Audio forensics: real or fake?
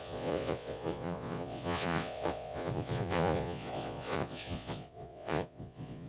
fake